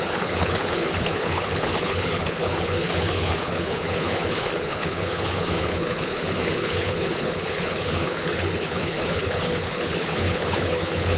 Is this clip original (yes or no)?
no